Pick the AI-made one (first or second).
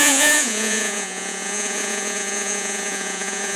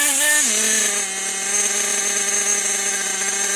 first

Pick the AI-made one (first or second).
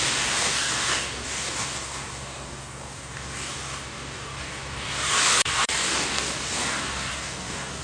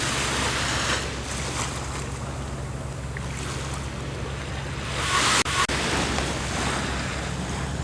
first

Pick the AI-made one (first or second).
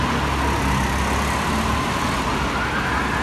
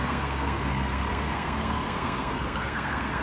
second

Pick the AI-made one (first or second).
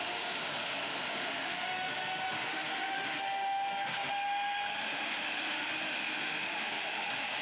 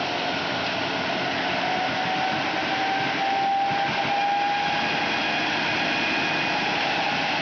first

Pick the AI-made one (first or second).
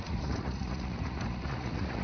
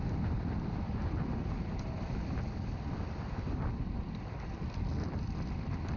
first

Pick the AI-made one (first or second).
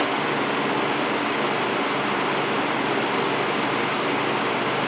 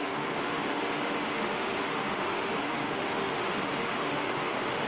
second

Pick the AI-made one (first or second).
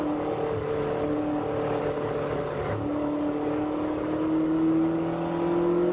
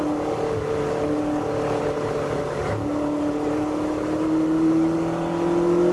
second